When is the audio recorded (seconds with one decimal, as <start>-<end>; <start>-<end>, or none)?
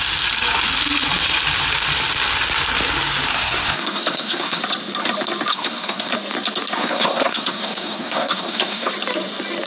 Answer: 0.0-3.3; 4.6-5.5; 6.1-6.8; 8.9-9.7